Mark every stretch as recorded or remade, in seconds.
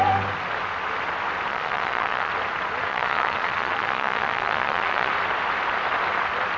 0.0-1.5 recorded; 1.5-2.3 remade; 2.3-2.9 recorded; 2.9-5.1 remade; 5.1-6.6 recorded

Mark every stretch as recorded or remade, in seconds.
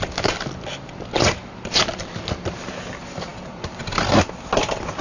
0.0-5.0 recorded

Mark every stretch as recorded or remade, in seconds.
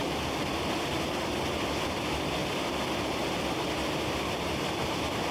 0.0-5.3 recorded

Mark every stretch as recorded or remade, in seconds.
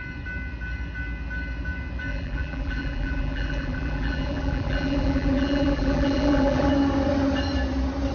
0.0-2.1 recorded; 2.1-6.7 remade; 6.7-8.1 recorded